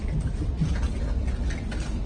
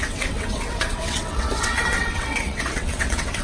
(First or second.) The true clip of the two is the first